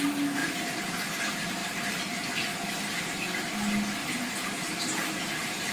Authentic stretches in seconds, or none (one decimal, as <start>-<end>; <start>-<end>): 0.0-0.4; 0.9-1.6; 2.2-4.0